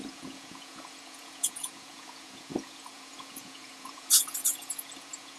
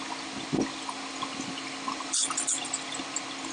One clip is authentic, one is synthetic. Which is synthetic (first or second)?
first